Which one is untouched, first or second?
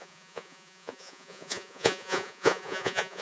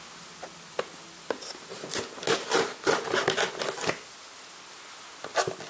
second